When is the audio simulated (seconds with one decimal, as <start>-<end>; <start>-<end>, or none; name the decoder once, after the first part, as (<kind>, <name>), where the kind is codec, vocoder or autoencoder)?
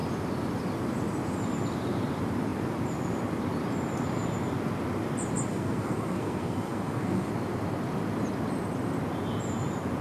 5.5-7.3 (codec, SNAC)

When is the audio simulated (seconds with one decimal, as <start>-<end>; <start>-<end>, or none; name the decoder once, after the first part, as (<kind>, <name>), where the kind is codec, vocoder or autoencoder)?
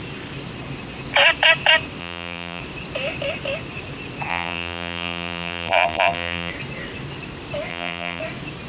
2.0-2.6 (vocoder, BigVGAN v2); 4.3-6.5; 7.7-8.2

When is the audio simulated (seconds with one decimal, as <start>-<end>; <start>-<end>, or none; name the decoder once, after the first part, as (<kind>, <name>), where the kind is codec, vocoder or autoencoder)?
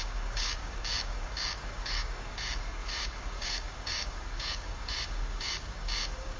0.0-6.4 (codec, DAC)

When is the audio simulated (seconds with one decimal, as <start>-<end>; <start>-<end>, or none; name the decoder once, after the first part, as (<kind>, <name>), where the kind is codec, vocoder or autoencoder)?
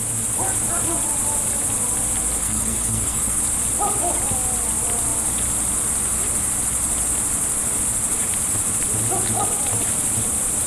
2.4-3.4 (codec, SNAC)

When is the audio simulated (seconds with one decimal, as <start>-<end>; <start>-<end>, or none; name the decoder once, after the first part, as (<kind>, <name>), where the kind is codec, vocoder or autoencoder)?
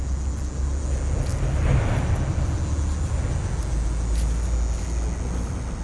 none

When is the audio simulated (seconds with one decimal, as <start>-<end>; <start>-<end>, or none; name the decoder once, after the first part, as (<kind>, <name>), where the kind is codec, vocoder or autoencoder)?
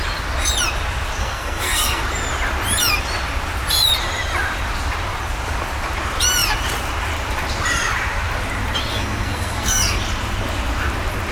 1.2-2.0 (codec, SNAC); 8.9-10.0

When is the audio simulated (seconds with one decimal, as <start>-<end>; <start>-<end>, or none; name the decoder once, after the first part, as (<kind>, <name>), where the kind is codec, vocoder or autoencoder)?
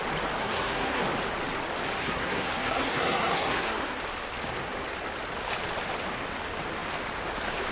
0.4-1.0 (codec, SNAC); 2.0-4.0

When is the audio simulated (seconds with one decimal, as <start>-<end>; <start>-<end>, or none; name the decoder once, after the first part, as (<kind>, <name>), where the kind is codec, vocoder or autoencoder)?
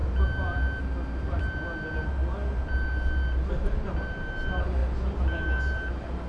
none